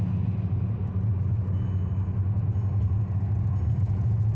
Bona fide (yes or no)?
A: yes